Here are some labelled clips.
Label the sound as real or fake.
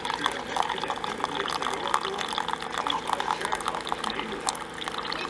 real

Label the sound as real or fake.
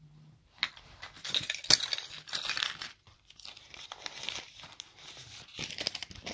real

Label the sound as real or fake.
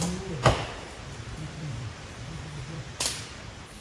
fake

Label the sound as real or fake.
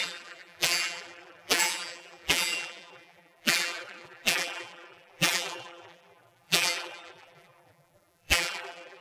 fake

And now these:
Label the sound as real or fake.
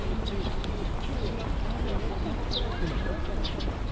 real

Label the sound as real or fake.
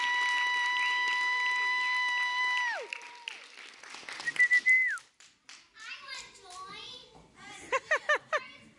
real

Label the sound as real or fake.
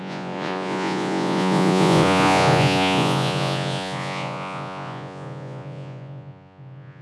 fake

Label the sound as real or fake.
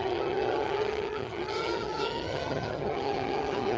fake